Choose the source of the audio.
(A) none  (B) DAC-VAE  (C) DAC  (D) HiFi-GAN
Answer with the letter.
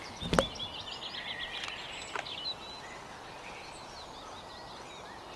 A